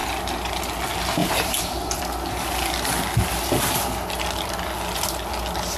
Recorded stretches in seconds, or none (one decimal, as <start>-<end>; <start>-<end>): 0.6-1.2; 2.0-5.8